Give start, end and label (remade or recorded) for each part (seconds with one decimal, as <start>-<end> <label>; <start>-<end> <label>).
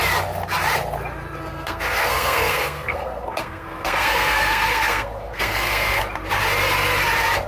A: 0.0-1.5 recorded; 1.5-6.0 remade; 6.0-7.5 recorded